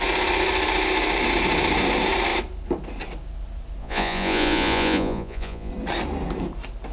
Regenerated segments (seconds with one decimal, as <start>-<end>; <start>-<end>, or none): 3.8-5.7